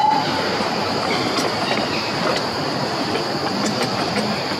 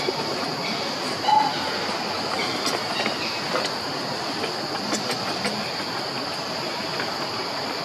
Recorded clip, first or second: second